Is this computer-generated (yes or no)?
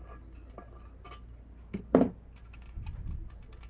no